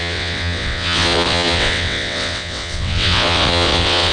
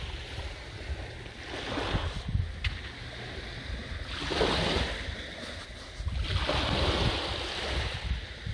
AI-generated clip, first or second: first